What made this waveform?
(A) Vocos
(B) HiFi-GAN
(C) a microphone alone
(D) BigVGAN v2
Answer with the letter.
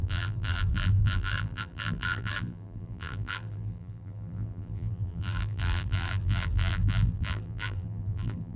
D